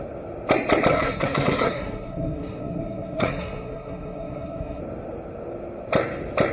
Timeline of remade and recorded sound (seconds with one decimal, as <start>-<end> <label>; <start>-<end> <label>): 0.0-0.9 recorded; 0.9-4.8 remade; 4.8-6.5 recorded